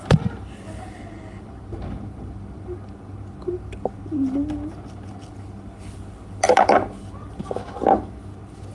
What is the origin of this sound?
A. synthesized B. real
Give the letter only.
B